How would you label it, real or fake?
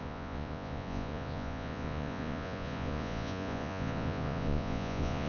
fake